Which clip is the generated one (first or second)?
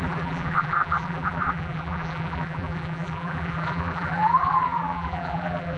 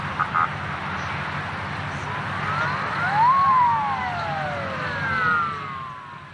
first